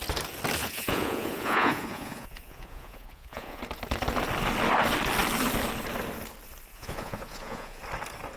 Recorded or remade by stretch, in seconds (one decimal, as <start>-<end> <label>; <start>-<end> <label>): 0.0-0.6 recorded; 0.6-3.6 remade; 3.6-6.7 recorded; 6.7-7.8 remade; 7.8-8.4 recorded